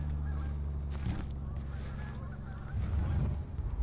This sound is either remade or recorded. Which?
recorded